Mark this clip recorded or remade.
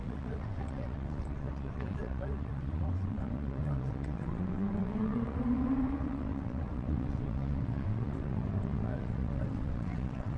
remade